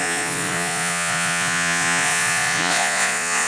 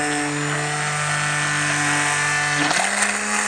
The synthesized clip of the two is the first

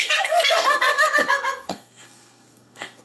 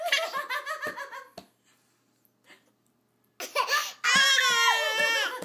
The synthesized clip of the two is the first